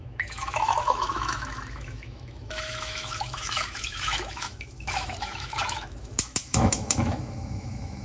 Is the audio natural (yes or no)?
no